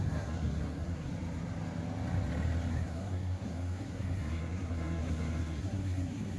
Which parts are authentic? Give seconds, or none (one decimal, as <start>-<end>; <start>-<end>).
1.1-2.7

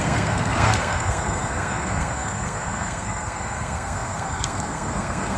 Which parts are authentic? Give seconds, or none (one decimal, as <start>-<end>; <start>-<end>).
none